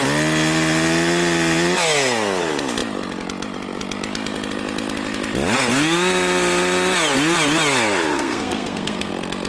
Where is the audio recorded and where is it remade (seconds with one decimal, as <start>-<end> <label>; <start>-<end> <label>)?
0.0-8.1 recorded; 8.1-9.1 remade; 9.1-9.5 recorded